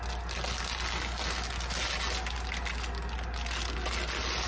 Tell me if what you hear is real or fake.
real